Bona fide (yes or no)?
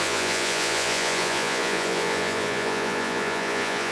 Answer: no